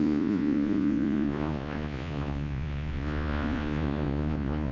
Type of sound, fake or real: fake